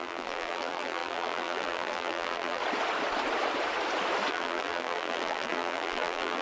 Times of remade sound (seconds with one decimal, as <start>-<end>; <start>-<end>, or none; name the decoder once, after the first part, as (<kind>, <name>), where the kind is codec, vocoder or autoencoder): 0.0-2.6 (vocoder, BigVGAN v2); 4.3-6.4